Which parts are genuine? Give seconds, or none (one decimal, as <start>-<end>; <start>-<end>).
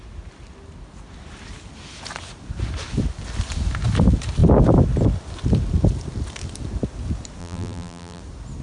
0.0-7.4; 8.2-8.6